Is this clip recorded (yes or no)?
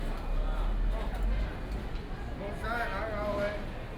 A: yes